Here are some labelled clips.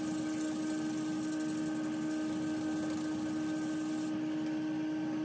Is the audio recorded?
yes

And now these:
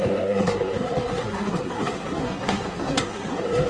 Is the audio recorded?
no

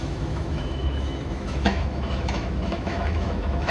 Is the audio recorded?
no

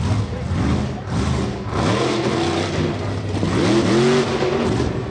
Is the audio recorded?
yes